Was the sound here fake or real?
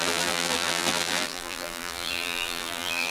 fake